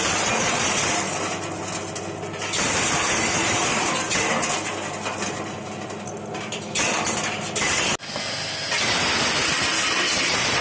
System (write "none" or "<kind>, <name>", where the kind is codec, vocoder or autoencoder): none